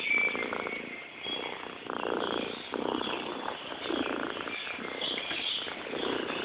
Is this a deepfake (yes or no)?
no